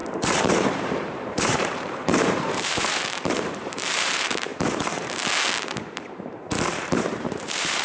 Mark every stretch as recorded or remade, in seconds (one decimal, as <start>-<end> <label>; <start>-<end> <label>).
0.0-4.5 remade; 4.5-6.2 recorded; 6.2-7.8 remade